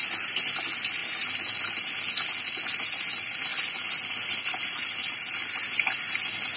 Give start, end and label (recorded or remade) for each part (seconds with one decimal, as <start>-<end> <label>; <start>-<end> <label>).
0.0-6.6 recorded